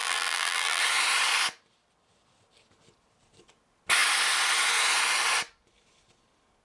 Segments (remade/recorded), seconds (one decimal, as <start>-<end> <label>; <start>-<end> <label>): 0.0-0.8 remade; 0.8-6.6 recorded